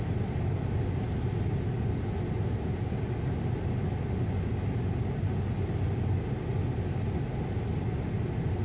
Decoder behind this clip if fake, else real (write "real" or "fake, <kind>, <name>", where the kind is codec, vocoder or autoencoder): real